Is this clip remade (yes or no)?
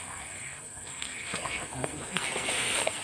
yes